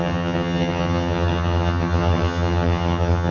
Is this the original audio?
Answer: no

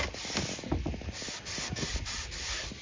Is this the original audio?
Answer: yes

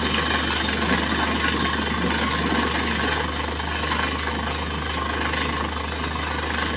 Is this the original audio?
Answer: yes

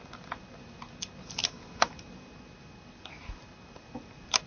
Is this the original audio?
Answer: yes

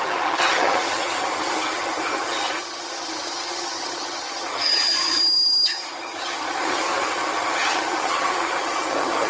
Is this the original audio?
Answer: no